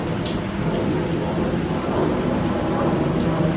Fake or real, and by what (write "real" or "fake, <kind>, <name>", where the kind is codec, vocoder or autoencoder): real